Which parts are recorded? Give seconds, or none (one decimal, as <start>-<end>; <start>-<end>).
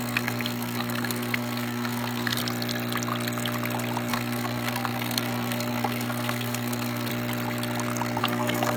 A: 2.4-4.1; 7.1-8.2